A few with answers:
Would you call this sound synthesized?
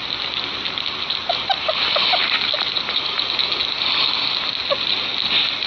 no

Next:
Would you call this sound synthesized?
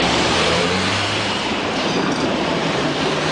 yes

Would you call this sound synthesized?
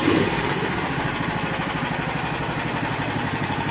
yes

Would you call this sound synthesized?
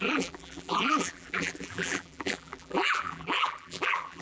yes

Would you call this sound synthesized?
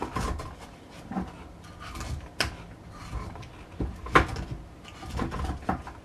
no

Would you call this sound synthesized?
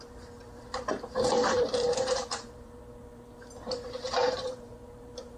yes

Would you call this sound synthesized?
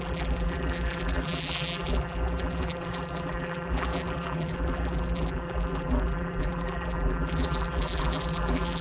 yes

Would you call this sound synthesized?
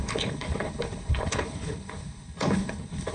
yes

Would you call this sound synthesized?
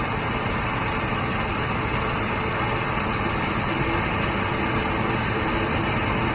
no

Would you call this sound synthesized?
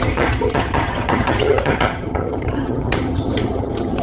yes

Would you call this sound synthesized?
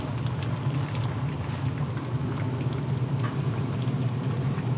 no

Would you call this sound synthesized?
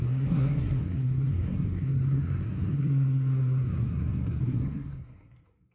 yes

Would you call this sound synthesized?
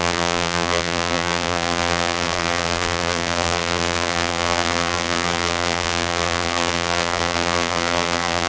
yes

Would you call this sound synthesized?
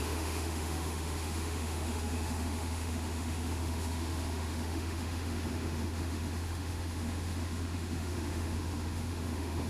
yes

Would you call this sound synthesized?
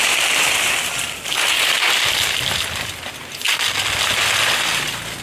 no